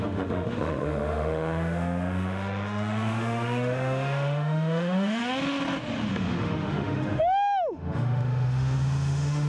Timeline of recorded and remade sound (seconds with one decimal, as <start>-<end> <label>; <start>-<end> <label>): 0.0-5.2 remade; 5.2-6.1 recorded; 6.1-9.5 remade